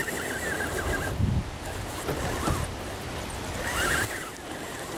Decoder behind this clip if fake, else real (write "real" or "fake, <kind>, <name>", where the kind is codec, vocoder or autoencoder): real